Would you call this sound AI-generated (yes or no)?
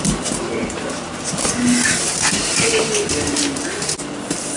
no